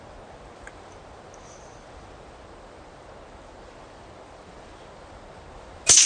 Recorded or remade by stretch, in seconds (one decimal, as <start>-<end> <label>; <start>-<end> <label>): 0.0-6.1 recorded